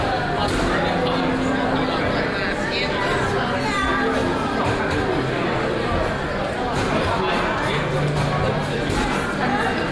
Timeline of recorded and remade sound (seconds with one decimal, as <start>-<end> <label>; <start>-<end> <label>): 0.0-9.9 recorded